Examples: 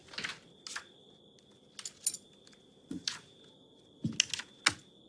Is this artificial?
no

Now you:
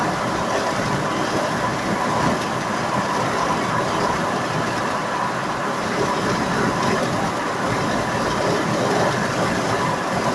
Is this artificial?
no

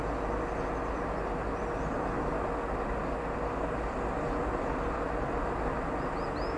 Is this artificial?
no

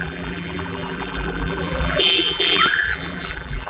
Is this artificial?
yes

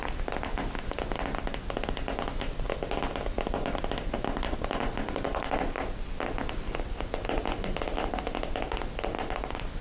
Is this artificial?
no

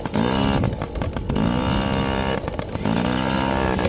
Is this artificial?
no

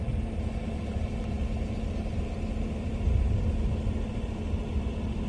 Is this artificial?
no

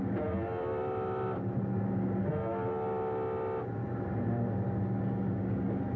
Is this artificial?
no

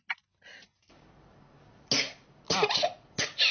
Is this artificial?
no